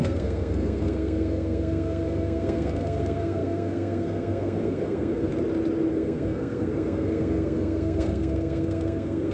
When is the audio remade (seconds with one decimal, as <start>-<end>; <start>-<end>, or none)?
0.0-5.3; 5.9-9.3